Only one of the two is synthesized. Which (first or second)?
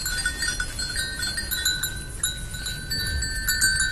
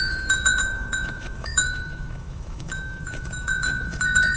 second